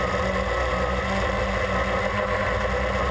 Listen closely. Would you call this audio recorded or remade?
recorded